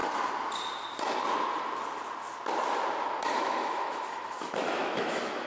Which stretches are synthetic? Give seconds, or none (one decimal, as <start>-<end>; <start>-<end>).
3.3-5.5